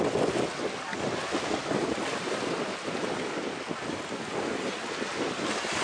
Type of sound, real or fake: real